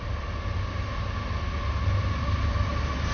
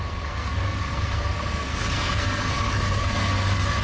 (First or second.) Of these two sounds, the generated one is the second